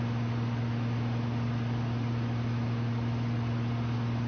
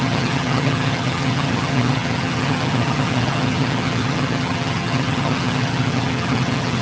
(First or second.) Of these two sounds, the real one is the first